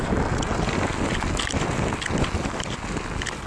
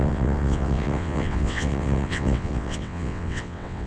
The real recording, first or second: first